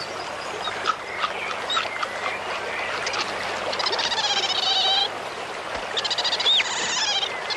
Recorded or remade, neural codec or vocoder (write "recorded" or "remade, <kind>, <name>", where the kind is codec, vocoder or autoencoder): recorded